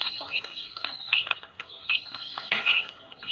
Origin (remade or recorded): remade